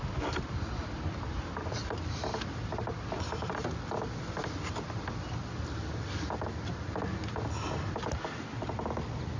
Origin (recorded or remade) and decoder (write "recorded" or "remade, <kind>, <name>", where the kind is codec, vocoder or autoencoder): recorded